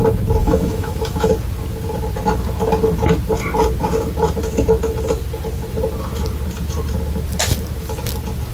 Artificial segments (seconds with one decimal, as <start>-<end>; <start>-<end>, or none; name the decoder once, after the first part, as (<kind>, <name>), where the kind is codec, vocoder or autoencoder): 0.4-1.3 (autoencoder, DAC-VAE)